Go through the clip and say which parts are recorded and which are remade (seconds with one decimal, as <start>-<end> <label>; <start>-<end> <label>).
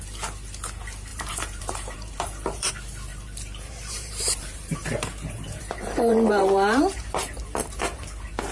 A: 0.0-1.1 recorded; 1.1-2.7 remade; 2.7-3.1 recorded; 3.1-7.2 remade; 7.2-8.5 recorded